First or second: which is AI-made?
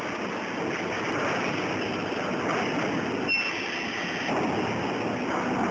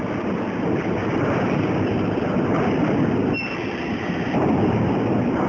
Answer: second